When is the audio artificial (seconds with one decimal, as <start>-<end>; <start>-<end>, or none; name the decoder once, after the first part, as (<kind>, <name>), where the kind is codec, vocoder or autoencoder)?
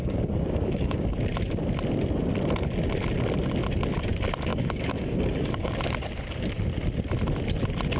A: 0.0-1.1 (codec, DAC); 4.5-5.7